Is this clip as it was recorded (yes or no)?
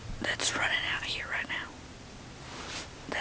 yes